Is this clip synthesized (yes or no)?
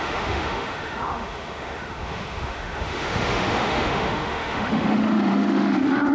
yes